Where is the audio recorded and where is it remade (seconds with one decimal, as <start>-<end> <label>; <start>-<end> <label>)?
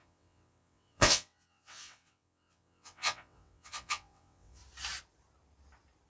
0.0-4.6 remade; 4.6-6.1 recorded